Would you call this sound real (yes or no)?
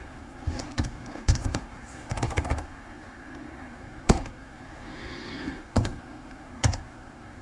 no